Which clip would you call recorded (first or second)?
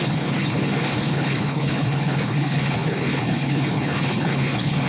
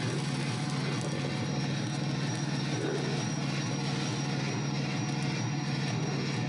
second